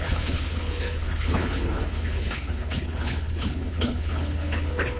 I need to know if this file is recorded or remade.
remade